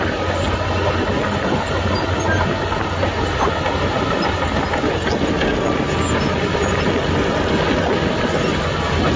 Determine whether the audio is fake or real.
real